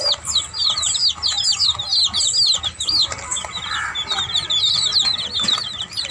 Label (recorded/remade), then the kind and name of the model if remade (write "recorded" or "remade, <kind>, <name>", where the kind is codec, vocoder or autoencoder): recorded